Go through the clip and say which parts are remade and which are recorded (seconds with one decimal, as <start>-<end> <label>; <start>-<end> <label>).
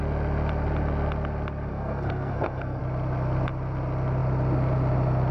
0.0-1.7 recorded; 1.7-2.8 remade; 2.8-5.3 recorded